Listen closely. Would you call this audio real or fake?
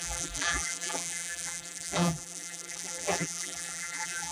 fake